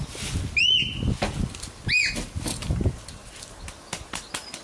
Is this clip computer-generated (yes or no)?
no